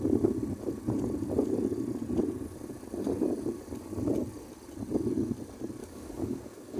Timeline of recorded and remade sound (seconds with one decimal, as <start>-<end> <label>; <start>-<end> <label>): 0.0-5.8 recorded; 5.8-6.8 remade